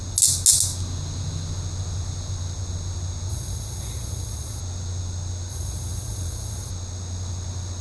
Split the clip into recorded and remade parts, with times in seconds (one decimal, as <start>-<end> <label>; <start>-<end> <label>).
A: 0.0-3.3 recorded; 3.3-4.6 remade; 4.6-5.5 recorded; 5.5-6.7 remade; 6.7-7.8 recorded